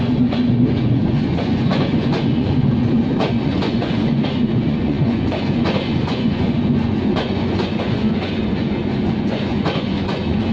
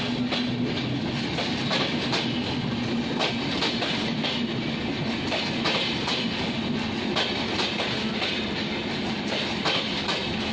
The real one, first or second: second